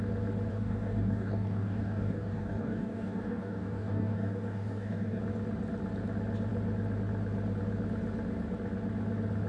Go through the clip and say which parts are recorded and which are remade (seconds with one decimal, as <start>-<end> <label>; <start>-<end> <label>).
0.0-0.5 recorded; 0.5-5.2 remade; 5.2-9.5 recorded